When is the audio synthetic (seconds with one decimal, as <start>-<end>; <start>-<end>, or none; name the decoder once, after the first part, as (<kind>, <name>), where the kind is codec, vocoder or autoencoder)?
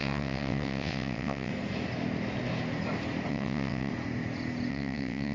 0.0-1.5 (vocoder, WaveNeXt); 3.3-3.9; 4.7-5.3